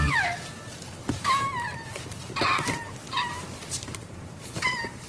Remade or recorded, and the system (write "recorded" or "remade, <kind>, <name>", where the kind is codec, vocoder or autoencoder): remade, vocoder, BigVGAN v2